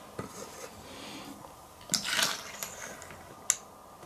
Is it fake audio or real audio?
real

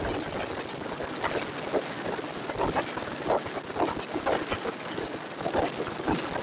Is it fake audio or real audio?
real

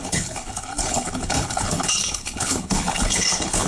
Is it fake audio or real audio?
fake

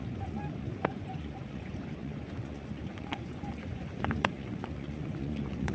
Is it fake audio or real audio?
fake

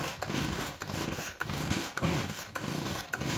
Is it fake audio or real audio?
fake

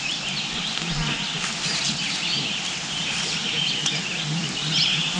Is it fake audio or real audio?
real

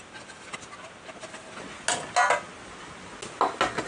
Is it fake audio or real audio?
real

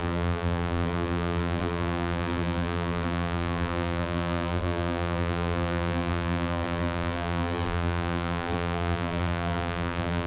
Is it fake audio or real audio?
fake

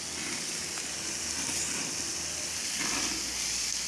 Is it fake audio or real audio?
real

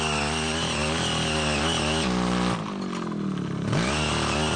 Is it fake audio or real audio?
real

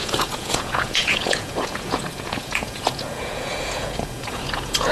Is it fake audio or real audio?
fake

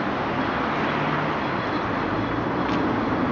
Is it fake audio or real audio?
real